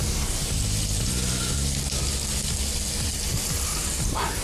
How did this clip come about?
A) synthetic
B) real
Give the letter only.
B